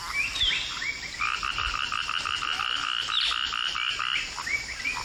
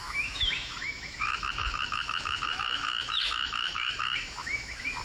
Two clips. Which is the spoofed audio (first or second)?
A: second